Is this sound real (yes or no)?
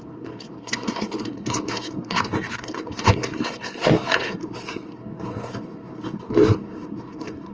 no